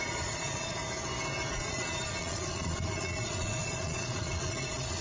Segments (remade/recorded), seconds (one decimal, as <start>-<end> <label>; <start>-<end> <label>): 0.0-0.8 remade; 0.8-1.5 recorded; 1.5-5.0 remade